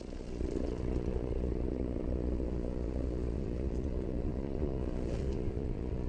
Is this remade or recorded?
remade